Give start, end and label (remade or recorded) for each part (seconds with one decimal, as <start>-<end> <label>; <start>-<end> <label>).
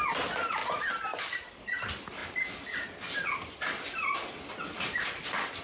0.0-0.6 recorded; 0.6-1.2 remade; 1.2-2.2 recorded; 2.2-5.6 remade